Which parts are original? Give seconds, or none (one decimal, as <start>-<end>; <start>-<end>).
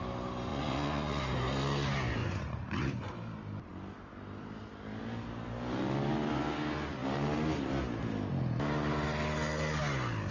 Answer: 0.0-0.5; 1.2-2.2; 3.1-10.3